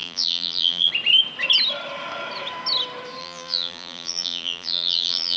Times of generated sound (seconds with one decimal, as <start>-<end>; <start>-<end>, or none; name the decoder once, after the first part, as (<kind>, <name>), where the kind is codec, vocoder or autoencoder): 0.0-0.9 (vocoder, BigVGAN v2); 3.2-5.4